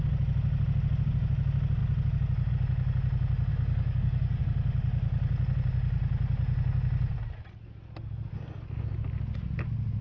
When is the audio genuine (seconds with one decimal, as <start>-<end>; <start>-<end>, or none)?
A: 0.0-3.5; 4.4-10.0